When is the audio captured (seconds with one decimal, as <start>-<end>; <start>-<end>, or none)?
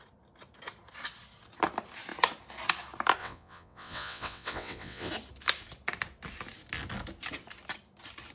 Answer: 0.0-3.2; 5.1-8.3